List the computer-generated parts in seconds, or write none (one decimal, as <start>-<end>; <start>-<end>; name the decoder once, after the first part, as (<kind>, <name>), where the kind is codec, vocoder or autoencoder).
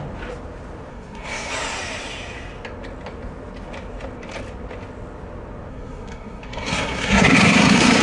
0.9-1.5 (codec, SNAC); 5.7-8.0